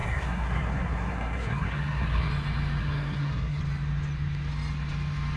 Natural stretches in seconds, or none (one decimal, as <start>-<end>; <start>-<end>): 2.3-2.8; 3.6-5.4